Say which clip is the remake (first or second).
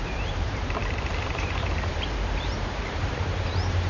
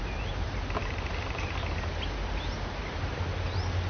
first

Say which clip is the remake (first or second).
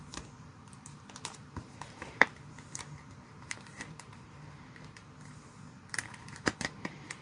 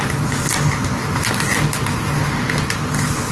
first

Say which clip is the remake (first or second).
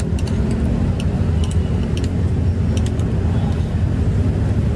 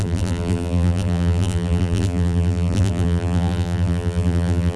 second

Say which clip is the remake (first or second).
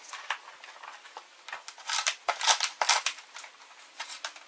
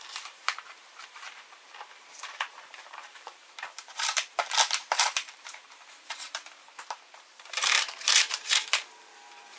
second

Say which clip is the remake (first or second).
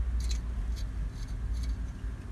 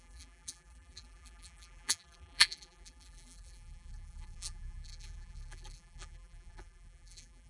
second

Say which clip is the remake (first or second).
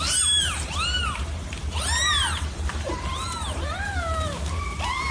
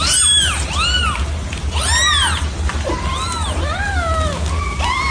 first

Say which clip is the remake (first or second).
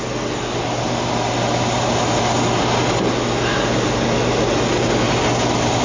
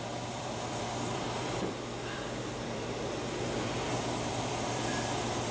second